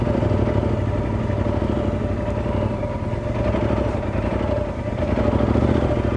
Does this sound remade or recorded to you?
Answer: recorded